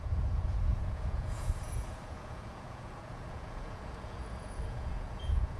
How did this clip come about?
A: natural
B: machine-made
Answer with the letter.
B